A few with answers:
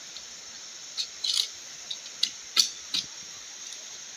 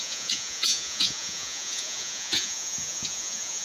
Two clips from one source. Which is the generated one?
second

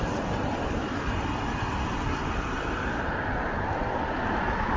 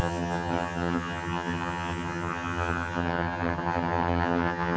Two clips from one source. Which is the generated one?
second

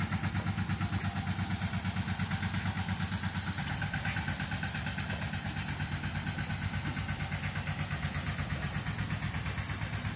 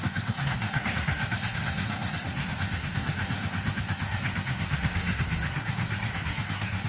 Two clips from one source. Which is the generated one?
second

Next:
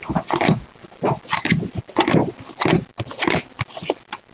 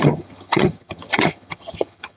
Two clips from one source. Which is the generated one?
second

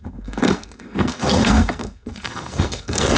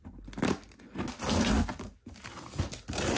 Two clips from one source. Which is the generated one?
first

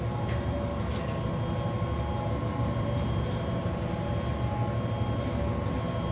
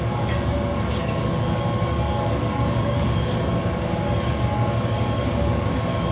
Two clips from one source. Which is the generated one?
second